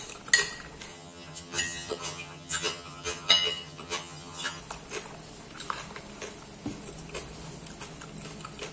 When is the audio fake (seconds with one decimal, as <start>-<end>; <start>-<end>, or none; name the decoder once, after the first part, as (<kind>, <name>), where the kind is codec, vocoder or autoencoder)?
0.9-4.6 (vocoder, HiFi-GAN)